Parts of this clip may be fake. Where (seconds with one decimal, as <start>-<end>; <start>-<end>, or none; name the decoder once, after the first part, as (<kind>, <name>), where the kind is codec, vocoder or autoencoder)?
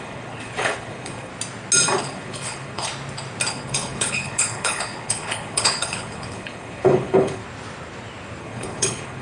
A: 0.0-1.3 (codec, HILCodec); 2.0-2.9; 3.5-7.4; 8.4-9.2